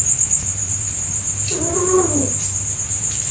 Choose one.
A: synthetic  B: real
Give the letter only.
A